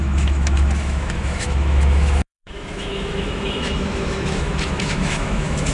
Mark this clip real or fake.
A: fake